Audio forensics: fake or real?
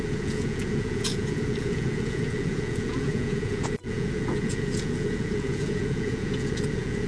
fake